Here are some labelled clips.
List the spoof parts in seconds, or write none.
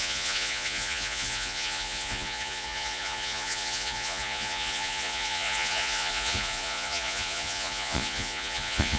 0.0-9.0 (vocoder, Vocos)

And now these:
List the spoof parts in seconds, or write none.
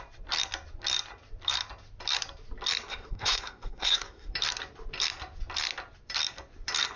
2.9-4.3 (codec, SNAC)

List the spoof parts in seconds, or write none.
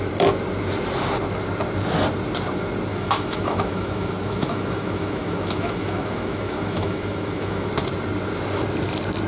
2.9-7.7 (autoencoder, DAC-VAE)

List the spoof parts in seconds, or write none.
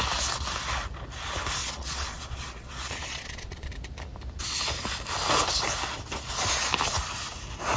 1.6-3.7 (vocoder, Vocos)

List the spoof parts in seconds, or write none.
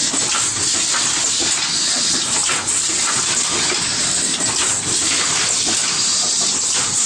6.0-7.1 (vocoder, BigVGAN v2)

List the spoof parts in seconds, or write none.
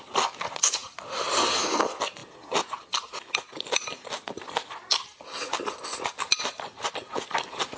none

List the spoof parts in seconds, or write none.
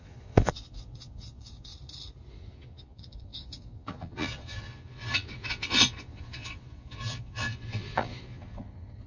0.0-1.7 (vocoder, Vocos); 2.3-9.1